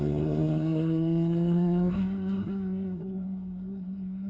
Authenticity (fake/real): fake